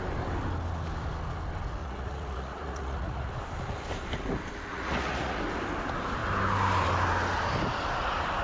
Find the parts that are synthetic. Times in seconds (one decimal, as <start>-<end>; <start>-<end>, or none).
1.8-3.3; 4.7-5.4